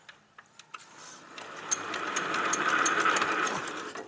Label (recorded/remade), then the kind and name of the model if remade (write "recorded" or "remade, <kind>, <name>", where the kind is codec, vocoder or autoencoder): recorded